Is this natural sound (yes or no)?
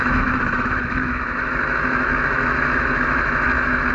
no